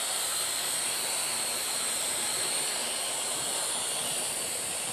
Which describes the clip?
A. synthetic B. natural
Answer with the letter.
B